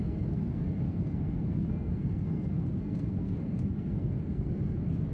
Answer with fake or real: fake